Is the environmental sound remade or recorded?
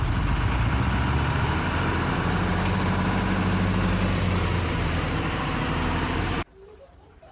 remade